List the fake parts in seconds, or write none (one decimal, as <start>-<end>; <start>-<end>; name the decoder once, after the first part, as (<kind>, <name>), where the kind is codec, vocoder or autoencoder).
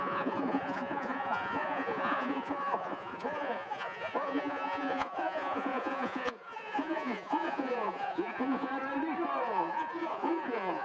0.0-8.7 (vocoder, Vocos); 9.4-10.8